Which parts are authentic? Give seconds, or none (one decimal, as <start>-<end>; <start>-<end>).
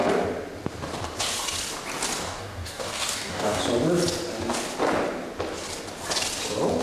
0.0-2.2; 3.6-6.8